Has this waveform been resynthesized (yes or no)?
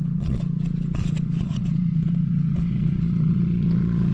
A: yes